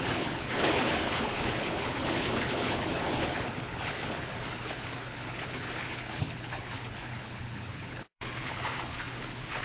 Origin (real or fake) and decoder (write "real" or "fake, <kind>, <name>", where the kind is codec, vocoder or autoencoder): fake, codec, HILCodec